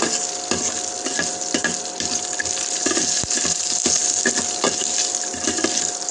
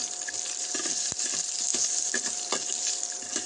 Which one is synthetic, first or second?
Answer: second